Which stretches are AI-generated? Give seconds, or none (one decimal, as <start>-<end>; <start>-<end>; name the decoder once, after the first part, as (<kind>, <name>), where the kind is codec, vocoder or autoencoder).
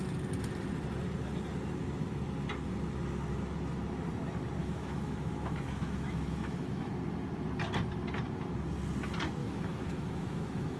4.6-6.9 (autoencoder, DAC-VAE); 9.4-10.8